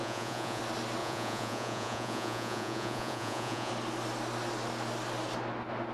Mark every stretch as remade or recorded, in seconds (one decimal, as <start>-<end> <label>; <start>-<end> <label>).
0.0-0.6 remade; 0.6-1.0 recorded; 1.0-3.7 remade; 3.7-5.9 recorded